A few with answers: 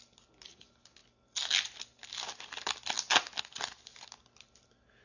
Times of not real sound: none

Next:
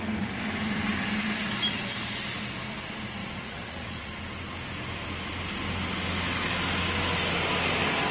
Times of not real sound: 3.2-4.1 (vocoder, Vocos)